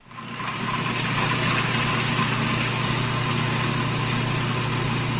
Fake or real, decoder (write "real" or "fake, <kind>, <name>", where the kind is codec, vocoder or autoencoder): real